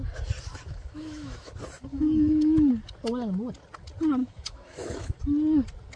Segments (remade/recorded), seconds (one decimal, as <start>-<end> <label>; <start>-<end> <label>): 0.0-0.5 recorded; 0.5-1.5 remade; 1.5-1.9 recorded; 1.9-2.7 remade; 2.7-4.2 recorded; 4.2-5.2 remade; 5.2-6.0 recorded